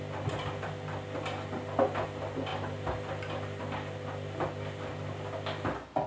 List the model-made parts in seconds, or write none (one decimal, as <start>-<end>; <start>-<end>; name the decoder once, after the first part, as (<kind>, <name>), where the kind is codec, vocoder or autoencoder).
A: none

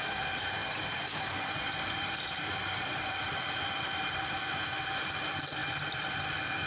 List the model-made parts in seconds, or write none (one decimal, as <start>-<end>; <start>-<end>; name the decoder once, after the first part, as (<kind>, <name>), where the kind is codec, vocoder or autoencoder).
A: none

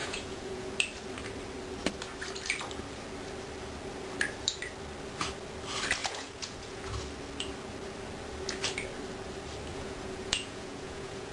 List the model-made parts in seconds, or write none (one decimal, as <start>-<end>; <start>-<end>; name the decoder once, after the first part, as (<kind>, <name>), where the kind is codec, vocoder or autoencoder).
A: 0.0-0.7 (vocoder, Vocos); 6.0-6.8; 9.7-11.3

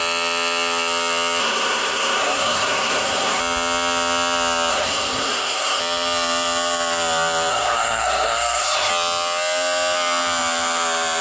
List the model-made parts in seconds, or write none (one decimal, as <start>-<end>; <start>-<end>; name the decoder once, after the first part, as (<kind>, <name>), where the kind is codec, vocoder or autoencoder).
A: 1.4-3.4 (codec, SNAC); 4.7-5.8; 7.5-8.9

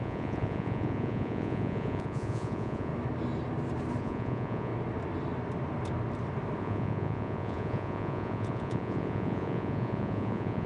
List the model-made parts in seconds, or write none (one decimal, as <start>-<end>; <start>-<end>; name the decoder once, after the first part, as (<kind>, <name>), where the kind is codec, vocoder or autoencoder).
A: 0.0-2.9 (vocoder, Vocos); 4.0-4.7; 6.6-10.7

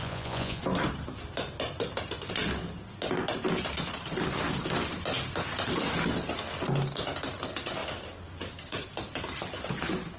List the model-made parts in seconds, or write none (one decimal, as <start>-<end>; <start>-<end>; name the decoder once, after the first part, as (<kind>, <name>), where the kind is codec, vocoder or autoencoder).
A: 0.0-0.6 (vocoder, Vocos)

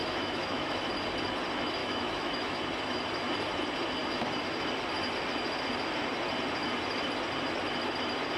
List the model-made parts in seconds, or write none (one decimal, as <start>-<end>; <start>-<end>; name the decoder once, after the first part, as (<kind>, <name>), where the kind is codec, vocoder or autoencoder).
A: 0.0-0.8 (autoencoder, DAC-VAE); 1.8-2.6

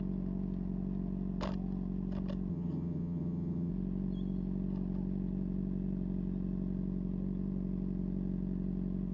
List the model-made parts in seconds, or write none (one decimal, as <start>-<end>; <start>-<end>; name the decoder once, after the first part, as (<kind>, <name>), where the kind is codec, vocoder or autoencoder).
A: 2.5-3.7 (vocoder, HiFi-GAN)